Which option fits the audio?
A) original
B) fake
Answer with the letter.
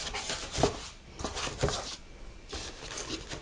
A